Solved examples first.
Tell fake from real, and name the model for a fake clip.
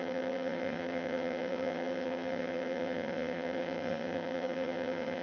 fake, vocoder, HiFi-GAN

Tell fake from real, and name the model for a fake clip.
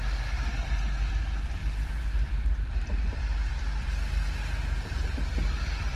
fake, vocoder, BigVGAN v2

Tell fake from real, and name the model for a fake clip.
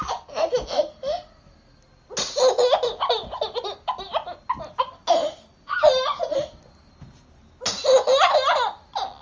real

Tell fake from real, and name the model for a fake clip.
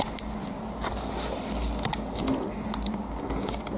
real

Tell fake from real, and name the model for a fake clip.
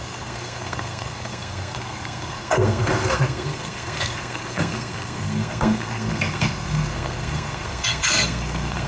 fake, codec, SNAC